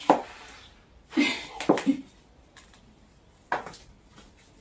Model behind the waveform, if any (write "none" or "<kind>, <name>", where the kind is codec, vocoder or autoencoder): none